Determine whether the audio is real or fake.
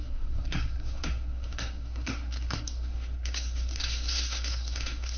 fake